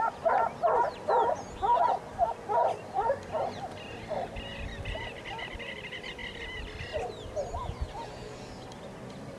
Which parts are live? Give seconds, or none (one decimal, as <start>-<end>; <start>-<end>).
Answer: 0.0-9.4